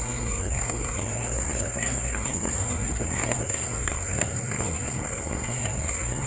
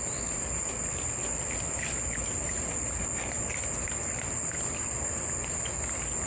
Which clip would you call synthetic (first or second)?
first